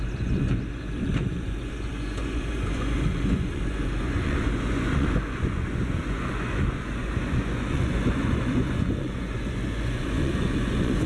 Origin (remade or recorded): remade